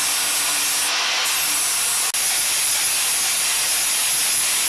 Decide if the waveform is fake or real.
real